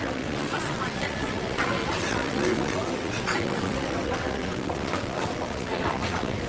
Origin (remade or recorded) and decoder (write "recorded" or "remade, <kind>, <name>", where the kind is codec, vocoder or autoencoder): remade, vocoder, WaveNeXt